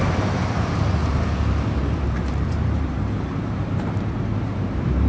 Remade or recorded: remade